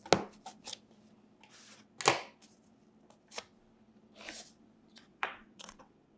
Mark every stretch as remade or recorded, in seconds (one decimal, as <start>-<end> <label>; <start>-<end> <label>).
0.0-4.9 recorded; 4.9-6.2 remade